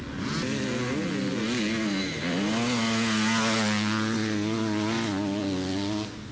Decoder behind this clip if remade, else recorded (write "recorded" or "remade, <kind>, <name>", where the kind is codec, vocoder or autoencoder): recorded